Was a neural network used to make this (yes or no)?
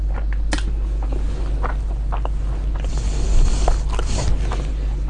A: no